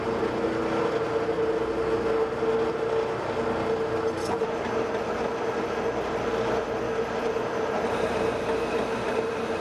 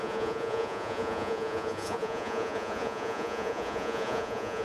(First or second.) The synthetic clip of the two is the second